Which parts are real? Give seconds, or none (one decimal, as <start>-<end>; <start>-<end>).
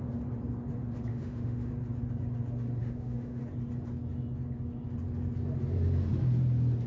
0.0-1.1; 1.7-2.8; 3.4-6.9